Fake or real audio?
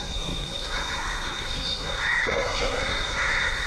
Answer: fake